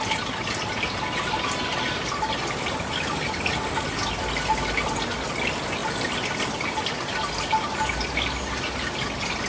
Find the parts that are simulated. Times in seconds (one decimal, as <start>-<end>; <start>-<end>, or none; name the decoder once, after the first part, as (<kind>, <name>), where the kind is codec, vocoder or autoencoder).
none

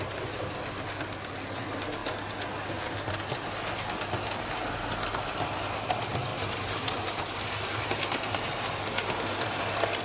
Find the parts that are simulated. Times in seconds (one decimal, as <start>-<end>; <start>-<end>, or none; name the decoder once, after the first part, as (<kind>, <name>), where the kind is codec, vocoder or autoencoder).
6.3-7.5 (vocoder, BigVGAN v2); 7.9-8.7

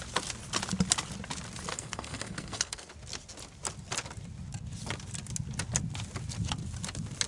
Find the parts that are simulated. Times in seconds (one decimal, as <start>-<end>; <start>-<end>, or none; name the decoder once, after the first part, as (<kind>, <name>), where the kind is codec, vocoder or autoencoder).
1.7-2.9 (codec, SNAC)

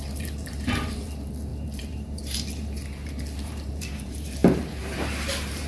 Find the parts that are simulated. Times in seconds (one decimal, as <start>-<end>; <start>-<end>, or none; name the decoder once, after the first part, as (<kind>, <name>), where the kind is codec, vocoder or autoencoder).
0.0-5.7 (vocoder, BigVGAN v2)

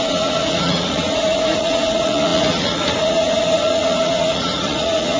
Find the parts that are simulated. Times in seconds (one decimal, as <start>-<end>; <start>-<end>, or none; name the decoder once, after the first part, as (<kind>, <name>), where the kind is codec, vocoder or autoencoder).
0.0-5.2 (vocoder, Vocos)

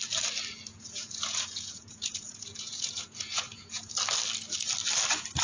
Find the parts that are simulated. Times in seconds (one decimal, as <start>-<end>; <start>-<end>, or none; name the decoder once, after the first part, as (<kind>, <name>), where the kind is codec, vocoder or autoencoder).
0.7-3.9 (vocoder, Vocos)

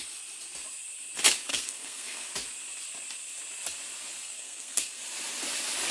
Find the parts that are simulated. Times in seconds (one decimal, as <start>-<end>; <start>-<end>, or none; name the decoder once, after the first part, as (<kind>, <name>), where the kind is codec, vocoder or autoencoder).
1.5-2.3 (codec, SNAC); 4.2-5.0